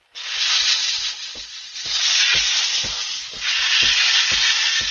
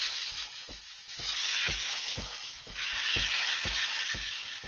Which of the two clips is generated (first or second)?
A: second